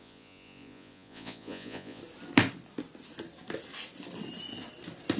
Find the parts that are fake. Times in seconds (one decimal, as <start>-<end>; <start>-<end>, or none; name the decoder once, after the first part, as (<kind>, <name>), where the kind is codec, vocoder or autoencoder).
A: 0.0-2.0 (vocoder, Vocos)